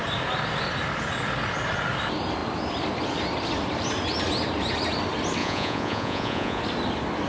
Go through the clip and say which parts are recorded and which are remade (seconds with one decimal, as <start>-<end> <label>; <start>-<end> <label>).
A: 0.0-5.4 recorded; 5.4-6.6 remade; 6.6-7.3 recorded